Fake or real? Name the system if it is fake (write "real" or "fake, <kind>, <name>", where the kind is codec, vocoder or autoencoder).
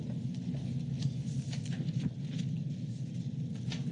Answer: real